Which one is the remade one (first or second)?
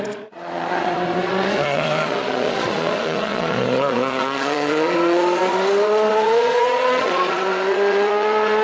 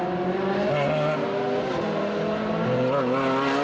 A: first